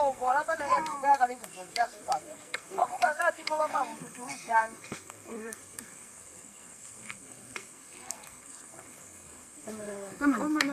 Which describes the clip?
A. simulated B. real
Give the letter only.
A